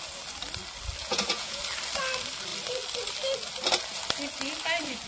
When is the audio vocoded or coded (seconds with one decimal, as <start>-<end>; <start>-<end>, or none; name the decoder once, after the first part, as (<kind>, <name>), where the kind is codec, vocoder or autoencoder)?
1.0-1.6 (vocoder, Vocos)